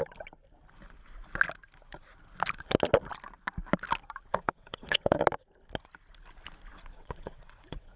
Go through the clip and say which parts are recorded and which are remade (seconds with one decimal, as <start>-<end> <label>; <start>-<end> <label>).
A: 0.0-4.3 recorded; 4.3-5.2 remade; 5.2-6.7 recorded; 6.7-8.0 remade